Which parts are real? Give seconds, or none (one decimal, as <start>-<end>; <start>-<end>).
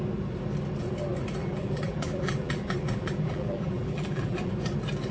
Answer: 0.0-1.4; 4.5-5.1